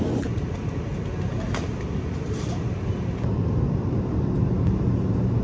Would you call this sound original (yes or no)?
yes